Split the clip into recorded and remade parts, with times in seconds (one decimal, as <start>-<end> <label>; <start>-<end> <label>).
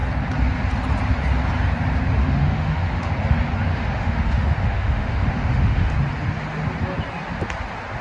0.0-2.2 recorded; 2.2-3.1 remade; 3.1-3.7 recorded; 3.7-5.9 remade; 5.9-8.0 recorded